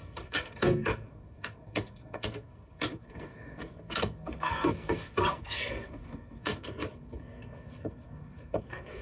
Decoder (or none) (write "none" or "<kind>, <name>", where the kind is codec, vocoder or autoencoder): codec, SNAC